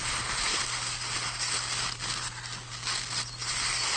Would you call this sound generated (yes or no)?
no